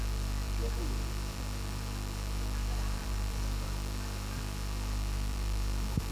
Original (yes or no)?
no